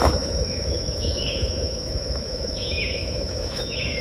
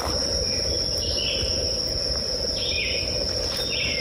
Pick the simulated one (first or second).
first